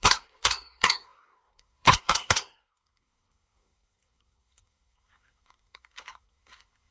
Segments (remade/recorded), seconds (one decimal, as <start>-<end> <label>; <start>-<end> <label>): 0.0-6.9 remade